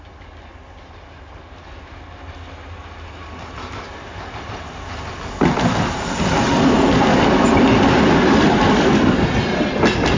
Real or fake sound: real